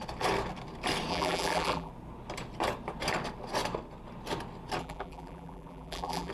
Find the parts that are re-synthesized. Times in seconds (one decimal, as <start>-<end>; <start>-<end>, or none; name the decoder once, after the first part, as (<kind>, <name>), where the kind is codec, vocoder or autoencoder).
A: 1.1-1.9 (vocoder, BigVGAN v2); 4.8-6.3